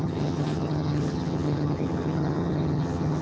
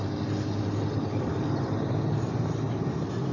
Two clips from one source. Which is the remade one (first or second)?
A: first